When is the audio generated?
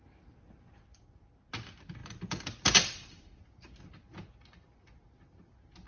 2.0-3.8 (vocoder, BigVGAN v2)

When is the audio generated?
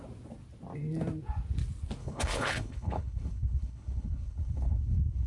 2.0-5.3 (codec, HILCodec)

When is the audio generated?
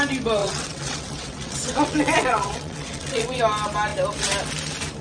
0.4-3.4 (vocoder, WaveNeXt)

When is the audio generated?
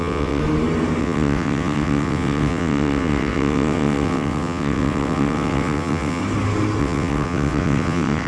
0.0-0.4 (vocoder, WaveNeXt); 1.0-6.2; 6.8-8.3